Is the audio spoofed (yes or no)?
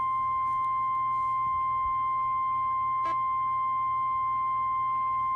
no